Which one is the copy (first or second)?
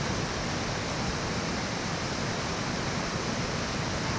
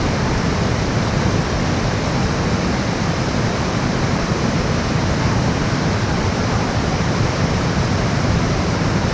second